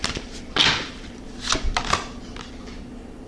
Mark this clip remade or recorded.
recorded